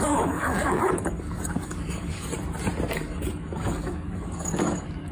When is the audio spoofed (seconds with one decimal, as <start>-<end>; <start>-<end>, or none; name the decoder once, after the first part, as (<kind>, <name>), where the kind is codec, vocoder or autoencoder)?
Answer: 0.0-2.3 (codec, DAC); 2.9-5.1